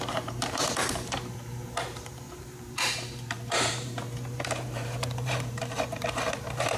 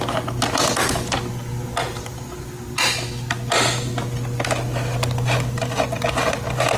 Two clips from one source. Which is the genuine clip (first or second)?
second